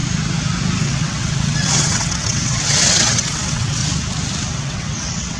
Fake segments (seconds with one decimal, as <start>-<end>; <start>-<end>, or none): 0.8-3.8; 4.6-5.4